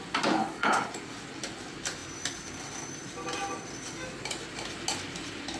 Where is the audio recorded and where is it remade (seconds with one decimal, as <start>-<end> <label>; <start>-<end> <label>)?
0.0-0.4 recorded; 0.4-0.9 remade; 0.9-5.6 recorded